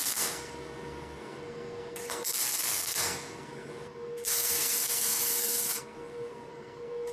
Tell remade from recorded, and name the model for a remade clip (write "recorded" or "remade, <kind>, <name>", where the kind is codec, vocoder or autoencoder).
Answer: remade, codec, SNAC